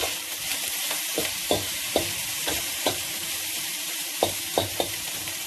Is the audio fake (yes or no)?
yes